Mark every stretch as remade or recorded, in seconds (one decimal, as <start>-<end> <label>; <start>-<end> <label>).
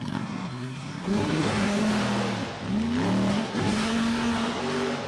0.0-1.9 remade; 1.9-3.3 recorded; 3.3-4.6 remade; 4.6-5.1 recorded